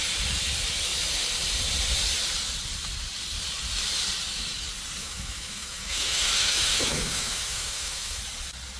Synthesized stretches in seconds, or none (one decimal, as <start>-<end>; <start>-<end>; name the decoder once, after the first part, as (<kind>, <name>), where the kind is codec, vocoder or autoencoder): 5.0-8.2 (autoencoder, DAC-VAE)